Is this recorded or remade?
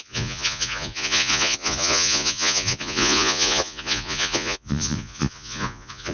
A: remade